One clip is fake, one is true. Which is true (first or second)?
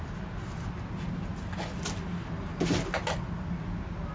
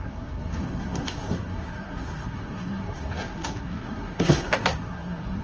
first